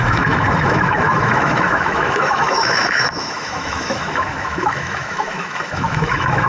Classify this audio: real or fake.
fake